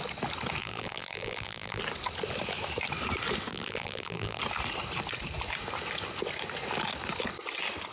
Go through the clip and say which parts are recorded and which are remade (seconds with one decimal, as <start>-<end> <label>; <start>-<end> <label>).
0.0-0.6 recorded; 0.6-1.8 remade; 1.8-3.5 recorded; 3.5-4.4 remade; 4.4-7.9 recorded